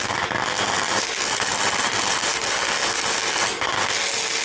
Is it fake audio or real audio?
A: real